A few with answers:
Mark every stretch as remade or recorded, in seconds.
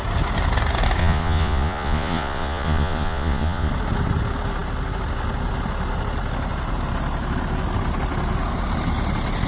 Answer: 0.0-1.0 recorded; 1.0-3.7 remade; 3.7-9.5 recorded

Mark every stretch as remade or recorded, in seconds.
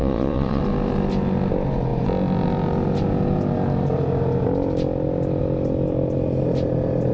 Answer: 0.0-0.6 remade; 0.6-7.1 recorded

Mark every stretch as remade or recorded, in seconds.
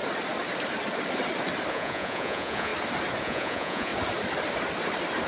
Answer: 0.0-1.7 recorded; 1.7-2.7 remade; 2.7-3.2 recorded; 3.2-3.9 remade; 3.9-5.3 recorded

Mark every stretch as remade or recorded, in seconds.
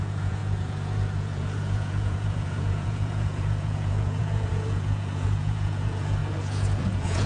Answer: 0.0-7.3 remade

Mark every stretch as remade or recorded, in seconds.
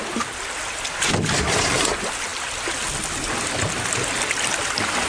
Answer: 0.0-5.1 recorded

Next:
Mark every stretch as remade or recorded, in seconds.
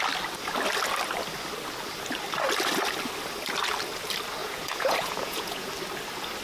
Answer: 0.0-4.4 recorded; 4.4-5.7 remade; 5.7-6.4 recorded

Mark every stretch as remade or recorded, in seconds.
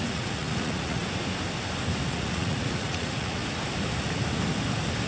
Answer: 0.0-1.0 remade; 1.0-2.1 recorded; 2.1-3.4 remade; 3.4-5.1 recorded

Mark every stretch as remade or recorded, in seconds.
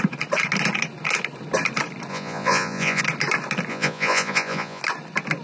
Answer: 0.0-2.1 recorded; 2.1-3.0 remade; 3.0-3.7 recorded; 3.7-4.8 remade; 4.8-5.4 recorded